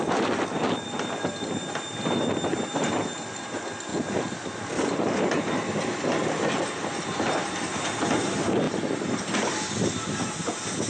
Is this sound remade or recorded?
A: recorded